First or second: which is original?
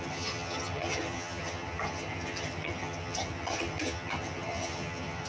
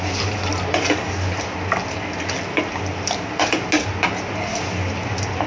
second